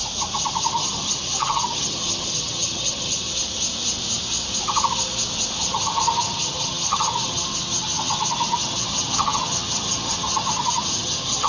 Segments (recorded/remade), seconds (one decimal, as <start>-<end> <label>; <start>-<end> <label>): 0.0-0.7 recorded; 0.7-3.3 remade; 3.3-5.7 recorded; 5.7-11.5 remade